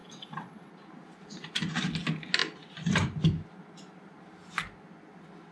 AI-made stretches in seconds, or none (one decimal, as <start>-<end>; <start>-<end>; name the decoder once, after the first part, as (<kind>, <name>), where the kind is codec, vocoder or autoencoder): 0.0-0.7 (vocoder, WaveNeXt)